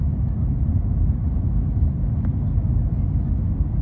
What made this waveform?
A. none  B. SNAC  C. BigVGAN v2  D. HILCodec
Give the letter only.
A